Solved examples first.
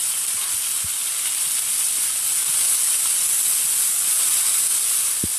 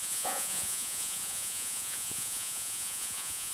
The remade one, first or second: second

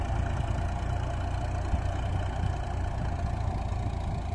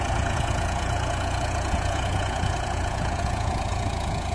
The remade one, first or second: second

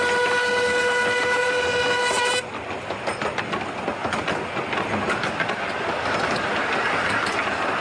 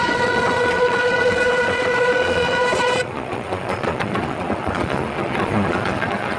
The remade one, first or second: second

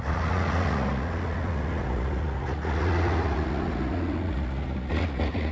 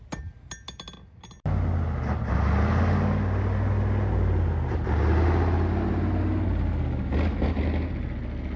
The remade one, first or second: first